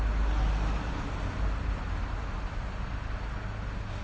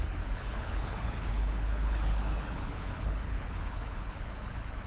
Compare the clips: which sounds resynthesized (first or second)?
second